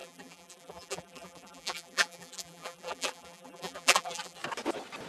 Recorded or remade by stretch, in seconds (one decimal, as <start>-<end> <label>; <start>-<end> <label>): 0.0-4.4 remade; 4.4-5.1 recorded